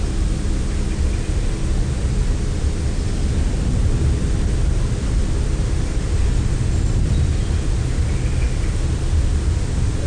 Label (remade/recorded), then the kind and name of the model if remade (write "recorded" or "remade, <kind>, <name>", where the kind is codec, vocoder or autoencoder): recorded